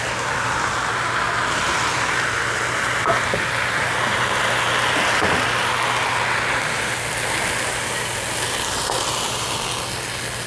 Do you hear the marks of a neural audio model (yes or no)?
no